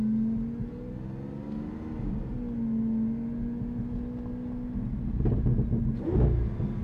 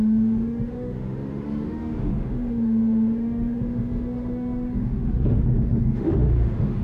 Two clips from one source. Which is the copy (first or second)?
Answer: second